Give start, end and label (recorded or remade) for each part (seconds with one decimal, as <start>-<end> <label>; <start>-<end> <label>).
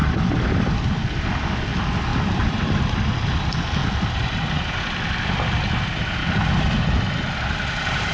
0.0-1.2 remade; 1.2-2.1 recorded; 2.1-2.8 remade; 2.8-3.8 recorded; 3.8-5.3 remade; 5.3-8.1 recorded